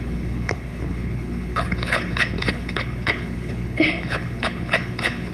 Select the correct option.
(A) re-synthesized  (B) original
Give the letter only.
A